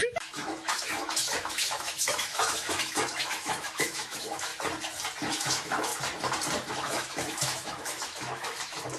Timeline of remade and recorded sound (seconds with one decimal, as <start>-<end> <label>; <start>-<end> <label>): 0.0-4.5 remade; 4.5-5.3 recorded; 5.3-5.9 remade; 5.9-6.7 recorded; 6.7-9.0 remade